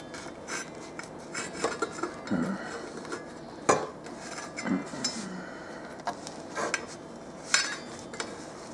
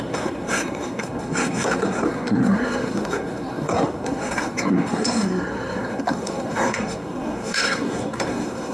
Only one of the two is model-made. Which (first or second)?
second